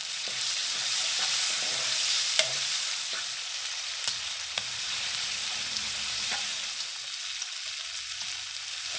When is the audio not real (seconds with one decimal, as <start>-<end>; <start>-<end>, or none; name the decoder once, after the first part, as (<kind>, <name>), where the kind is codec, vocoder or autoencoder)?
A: 0.0-6.5 (vocoder, BigVGAN v2)